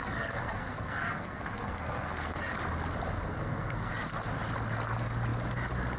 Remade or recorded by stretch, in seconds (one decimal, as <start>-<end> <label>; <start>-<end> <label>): 0.0-2.4 remade; 2.4-3.3 recorded; 3.3-3.9 remade; 3.9-6.0 recorded